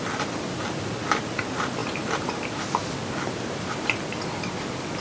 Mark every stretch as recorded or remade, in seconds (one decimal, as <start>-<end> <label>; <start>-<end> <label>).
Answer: 0.0-5.0 recorded